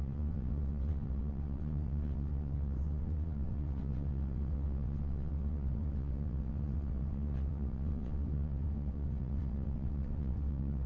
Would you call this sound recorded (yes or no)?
no